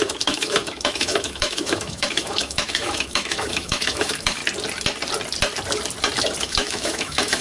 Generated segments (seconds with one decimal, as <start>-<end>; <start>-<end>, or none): 0.0-4.4; 6.4-7.4